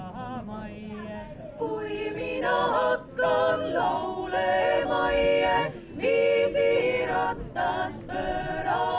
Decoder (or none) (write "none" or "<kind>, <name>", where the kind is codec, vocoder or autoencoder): none